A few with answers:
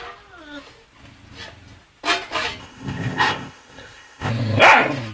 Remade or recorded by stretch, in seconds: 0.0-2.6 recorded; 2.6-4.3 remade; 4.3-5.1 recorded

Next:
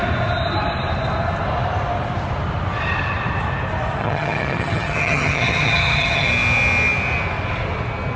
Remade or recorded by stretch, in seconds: 0.0-4.0 recorded; 4.0-6.3 remade; 6.3-8.2 recorded

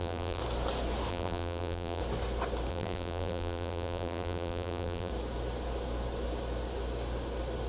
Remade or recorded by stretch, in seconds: 0.0-0.4 remade; 0.4-1.1 recorded; 1.1-2.0 remade; 2.0-2.7 recorded; 2.7-5.1 remade; 5.1-7.7 recorded

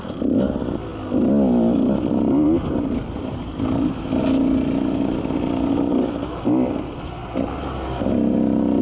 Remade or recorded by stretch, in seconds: 0.0-8.8 recorded

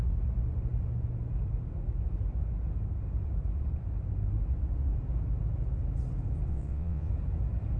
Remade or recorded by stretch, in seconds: 0.0-6.5 recorded; 6.5-7.1 remade; 7.1-7.8 recorded

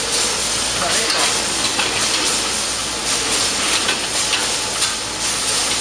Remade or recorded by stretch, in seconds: 0.0-1.7 recorded; 1.7-2.3 remade; 2.3-3.0 recorded; 3.0-3.8 remade; 3.8-5.8 recorded

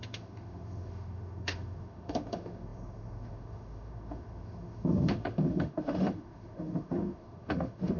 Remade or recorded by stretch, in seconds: 0.0-8.0 remade